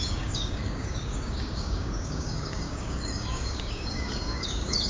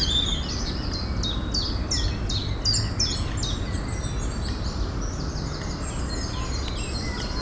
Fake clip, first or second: first